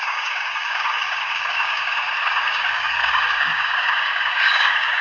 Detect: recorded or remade remade